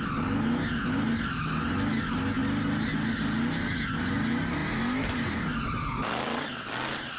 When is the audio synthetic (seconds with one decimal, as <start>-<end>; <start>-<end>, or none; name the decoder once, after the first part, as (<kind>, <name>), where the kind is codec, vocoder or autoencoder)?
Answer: none